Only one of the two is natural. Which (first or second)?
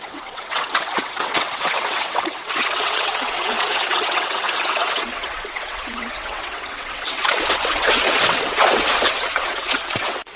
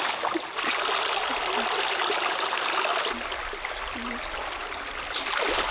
second